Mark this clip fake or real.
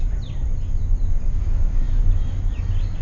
real